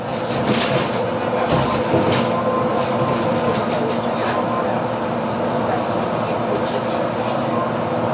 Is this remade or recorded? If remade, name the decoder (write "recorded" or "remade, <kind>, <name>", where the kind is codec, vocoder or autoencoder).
recorded